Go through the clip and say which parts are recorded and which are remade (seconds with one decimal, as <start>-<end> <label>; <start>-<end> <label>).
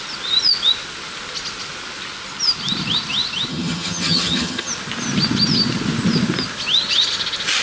0.0-3.5 recorded; 3.5-4.7 remade; 4.7-7.6 recorded